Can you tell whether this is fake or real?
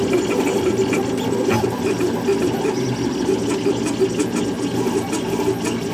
real